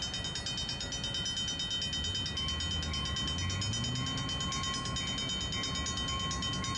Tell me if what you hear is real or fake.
real